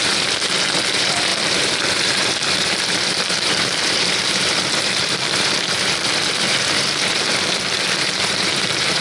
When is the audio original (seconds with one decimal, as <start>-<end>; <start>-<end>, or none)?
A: none

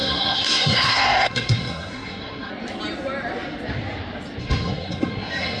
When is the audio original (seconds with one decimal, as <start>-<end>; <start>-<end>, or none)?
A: 2.5-4.4

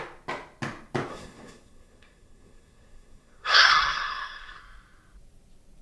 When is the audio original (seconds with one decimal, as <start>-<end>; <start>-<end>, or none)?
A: 0.0-1.1; 4.6-5.8

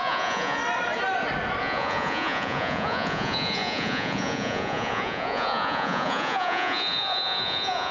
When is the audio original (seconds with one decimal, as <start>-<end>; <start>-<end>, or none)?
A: 0.6-1.6